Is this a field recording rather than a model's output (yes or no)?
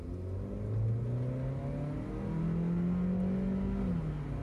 yes